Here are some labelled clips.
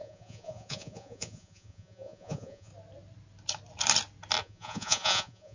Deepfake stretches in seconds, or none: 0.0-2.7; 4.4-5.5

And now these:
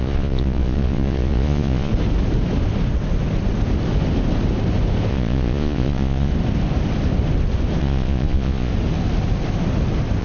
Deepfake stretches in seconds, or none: 0.0-1.9; 5.1-6.3; 7.8-8.7

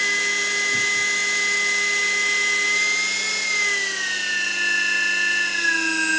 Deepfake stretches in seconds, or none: none